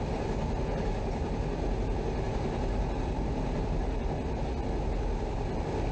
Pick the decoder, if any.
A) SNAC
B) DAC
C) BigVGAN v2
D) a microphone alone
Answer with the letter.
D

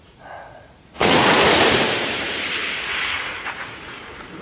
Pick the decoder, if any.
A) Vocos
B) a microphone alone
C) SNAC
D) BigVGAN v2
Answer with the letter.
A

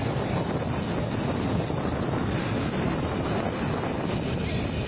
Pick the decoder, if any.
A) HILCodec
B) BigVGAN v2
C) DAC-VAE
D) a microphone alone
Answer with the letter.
D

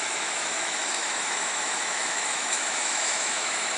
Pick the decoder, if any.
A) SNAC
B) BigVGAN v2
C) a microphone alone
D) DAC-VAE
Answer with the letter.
D